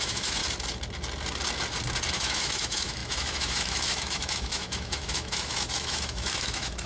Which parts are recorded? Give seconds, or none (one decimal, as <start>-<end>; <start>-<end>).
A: 0.4-2.1